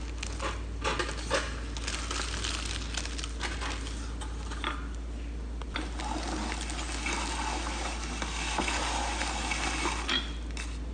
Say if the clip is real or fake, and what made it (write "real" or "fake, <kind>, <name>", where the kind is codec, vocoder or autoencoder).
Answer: real